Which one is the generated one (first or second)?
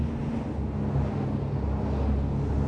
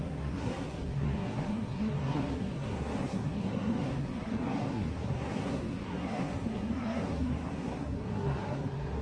second